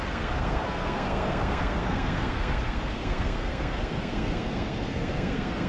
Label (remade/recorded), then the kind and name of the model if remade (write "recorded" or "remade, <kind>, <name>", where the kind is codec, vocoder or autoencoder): remade, codec, SNAC